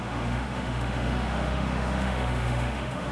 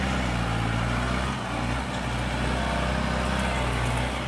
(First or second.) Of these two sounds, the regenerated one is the first